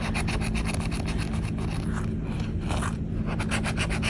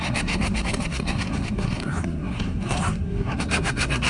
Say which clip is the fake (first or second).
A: second